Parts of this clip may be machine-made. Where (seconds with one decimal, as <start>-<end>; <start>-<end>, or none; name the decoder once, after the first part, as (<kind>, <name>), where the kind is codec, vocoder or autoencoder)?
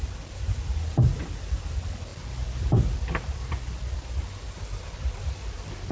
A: none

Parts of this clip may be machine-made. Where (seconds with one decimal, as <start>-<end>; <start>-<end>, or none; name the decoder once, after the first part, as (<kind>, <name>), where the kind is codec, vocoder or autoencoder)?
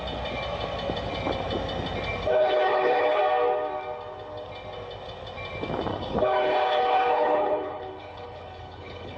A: 2.3-3.2 (codec, HILCodec); 5.9-9.2